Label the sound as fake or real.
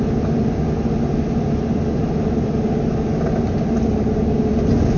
real